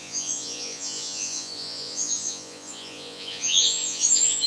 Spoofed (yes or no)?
yes